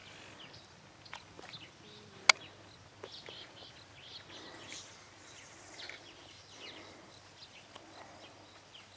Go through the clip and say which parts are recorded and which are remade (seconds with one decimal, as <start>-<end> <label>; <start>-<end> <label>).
0.0-9.0 recorded